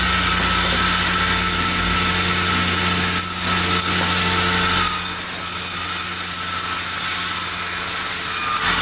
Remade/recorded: recorded